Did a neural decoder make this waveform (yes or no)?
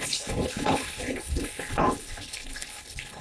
yes